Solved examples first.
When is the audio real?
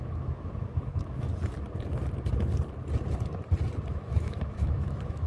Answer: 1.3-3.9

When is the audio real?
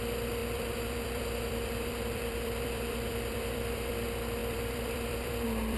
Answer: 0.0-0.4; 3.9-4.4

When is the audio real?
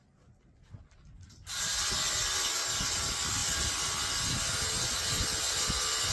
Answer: 0.0-6.1